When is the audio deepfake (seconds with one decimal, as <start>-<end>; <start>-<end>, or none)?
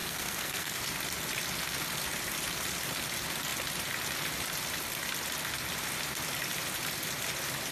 0.0-0.8